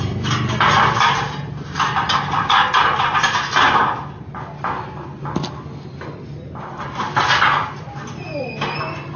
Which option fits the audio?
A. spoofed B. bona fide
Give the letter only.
B